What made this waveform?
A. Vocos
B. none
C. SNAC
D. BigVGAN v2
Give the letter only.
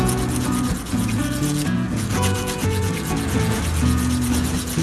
A